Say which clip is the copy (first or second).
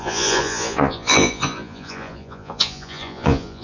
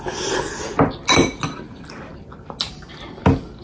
first